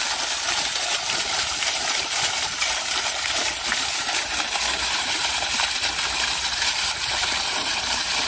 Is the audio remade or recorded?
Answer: remade